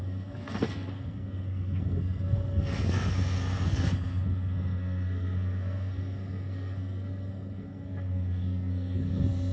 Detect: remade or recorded remade